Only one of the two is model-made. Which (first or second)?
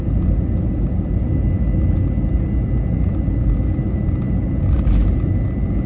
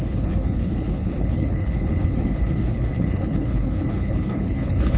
second